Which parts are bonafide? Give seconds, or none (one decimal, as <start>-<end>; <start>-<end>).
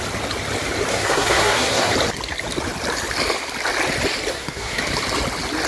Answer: 0.0-0.9; 1.9-4.3; 4.8-5.7